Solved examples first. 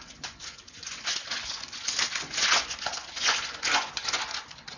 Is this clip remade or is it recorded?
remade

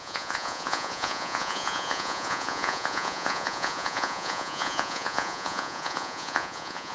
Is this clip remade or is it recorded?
remade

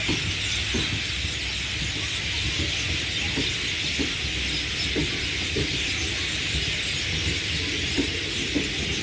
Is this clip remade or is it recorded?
recorded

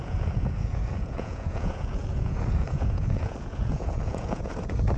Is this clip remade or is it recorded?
remade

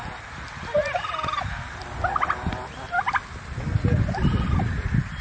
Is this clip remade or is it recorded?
recorded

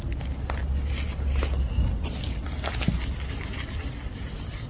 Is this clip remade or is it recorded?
recorded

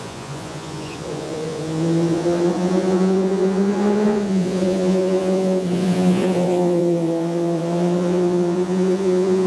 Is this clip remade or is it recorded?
remade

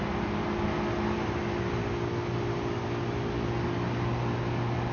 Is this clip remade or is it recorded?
recorded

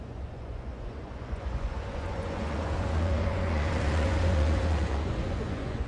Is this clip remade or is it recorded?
remade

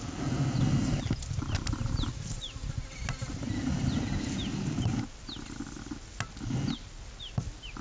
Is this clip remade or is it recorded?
recorded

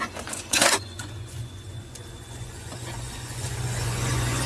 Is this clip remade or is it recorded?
remade